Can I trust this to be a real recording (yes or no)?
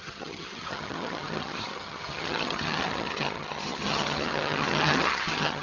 no